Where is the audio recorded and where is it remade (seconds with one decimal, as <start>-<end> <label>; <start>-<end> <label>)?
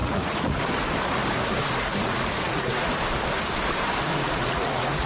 0.0-0.6 remade; 0.6-2.0 recorded; 2.0-2.9 remade; 2.9-4.1 recorded; 4.1-5.1 remade